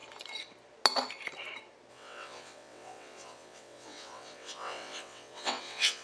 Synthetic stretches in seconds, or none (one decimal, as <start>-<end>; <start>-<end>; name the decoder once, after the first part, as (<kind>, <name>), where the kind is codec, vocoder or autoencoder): 1.9-6.0 (vocoder, WaveNeXt)